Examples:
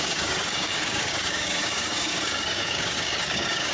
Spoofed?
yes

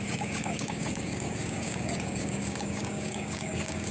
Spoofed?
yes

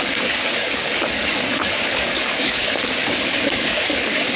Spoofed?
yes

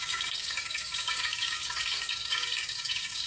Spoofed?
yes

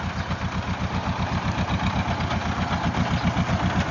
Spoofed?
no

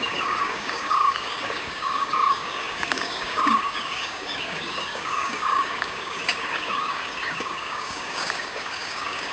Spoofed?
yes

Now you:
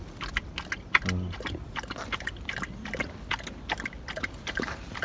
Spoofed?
no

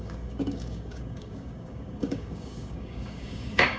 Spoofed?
yes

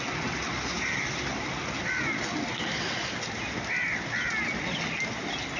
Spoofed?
no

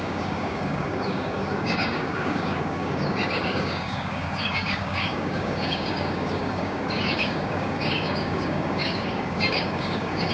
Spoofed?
yes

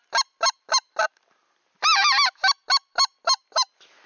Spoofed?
no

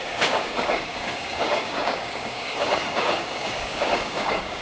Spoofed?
yes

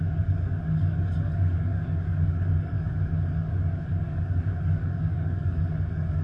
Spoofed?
yes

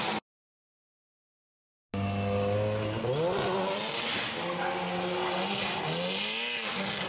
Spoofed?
no